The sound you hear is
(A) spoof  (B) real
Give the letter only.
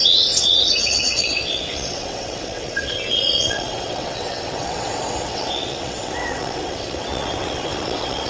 A